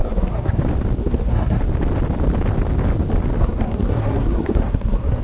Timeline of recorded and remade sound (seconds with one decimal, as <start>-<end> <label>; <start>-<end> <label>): 0.0-0.6 remade; 0.6-1.0 recorded; 1.0-1.6 remade; 1.6-3.4 recorded; 3.4-5.2 remade